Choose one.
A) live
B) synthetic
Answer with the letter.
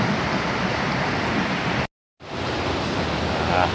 A